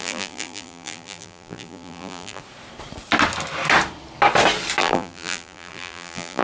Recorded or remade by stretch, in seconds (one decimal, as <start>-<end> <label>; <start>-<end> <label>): 0.0-2.4 remade; 2.4-4.8 recorded; 4.8-6.4 remade